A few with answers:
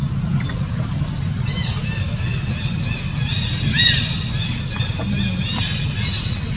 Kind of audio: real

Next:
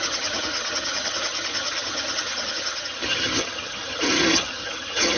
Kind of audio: fake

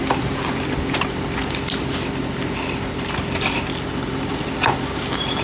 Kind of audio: real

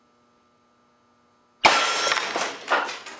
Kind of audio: real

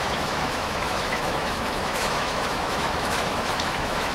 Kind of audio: fake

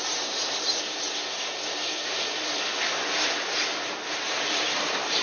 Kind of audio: fake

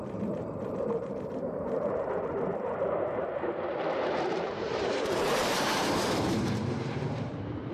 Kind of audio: fake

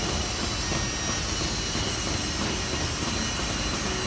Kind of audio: real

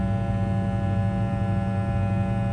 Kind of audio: real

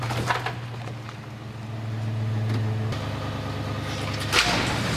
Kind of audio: real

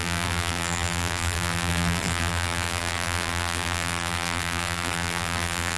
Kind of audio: fake